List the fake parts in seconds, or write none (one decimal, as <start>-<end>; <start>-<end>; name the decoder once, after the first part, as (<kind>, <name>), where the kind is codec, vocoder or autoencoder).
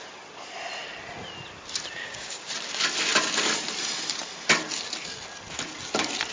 2.0-2.5 (codec, DAC)